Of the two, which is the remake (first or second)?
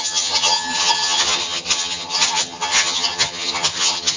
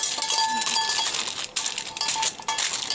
first